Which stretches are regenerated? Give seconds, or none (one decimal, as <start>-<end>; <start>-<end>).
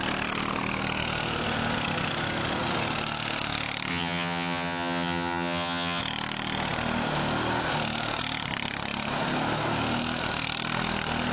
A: 3.9-6.0